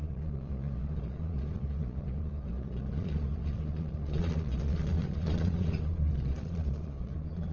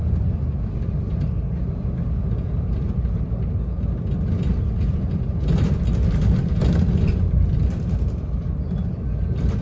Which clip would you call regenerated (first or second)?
first